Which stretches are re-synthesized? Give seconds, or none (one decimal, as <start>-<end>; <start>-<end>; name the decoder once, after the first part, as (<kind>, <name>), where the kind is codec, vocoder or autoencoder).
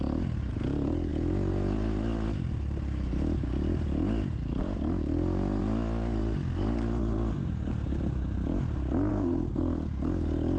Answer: 9.1-9.6 (codec, SNAC)